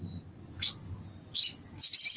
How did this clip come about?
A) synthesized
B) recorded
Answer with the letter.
B